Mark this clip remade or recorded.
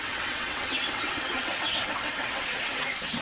remade